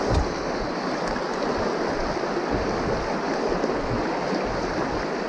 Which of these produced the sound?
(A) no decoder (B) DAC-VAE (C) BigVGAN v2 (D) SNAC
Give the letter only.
A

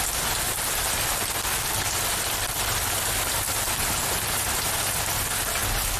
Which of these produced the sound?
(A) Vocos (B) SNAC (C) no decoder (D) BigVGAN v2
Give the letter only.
C